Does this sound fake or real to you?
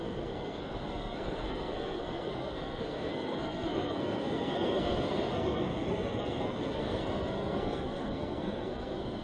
fake